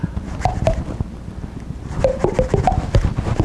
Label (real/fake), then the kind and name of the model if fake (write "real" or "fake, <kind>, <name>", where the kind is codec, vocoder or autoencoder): real